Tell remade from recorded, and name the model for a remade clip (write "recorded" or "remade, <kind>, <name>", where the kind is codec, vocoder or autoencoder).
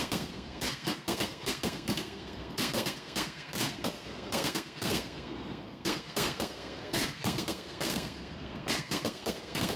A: remade, codec, SNAC